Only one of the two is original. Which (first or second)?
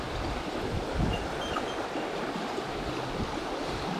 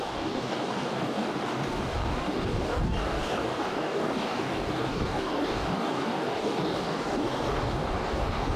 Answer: first